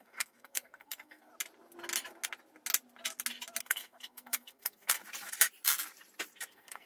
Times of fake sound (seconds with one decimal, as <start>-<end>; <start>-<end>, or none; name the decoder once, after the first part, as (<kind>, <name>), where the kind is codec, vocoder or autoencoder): 0.0-1.3 (codec, SNAC); 3.6-5.0; 6.5-6.9